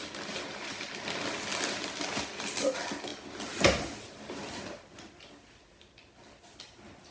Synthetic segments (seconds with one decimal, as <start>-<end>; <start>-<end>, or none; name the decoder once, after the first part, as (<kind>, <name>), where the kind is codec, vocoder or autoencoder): none